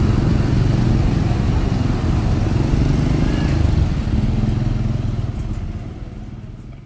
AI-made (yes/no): no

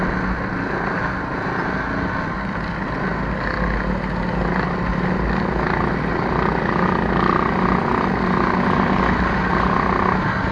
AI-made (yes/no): no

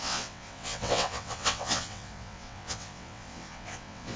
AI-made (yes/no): yes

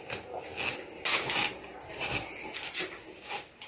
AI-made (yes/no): no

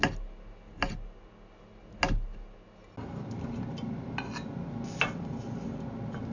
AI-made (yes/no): no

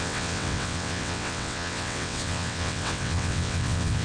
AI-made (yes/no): yes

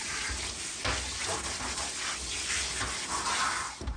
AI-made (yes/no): no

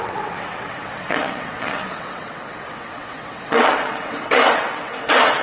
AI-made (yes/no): yes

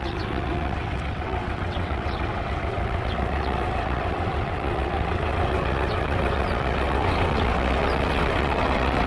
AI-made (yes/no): yes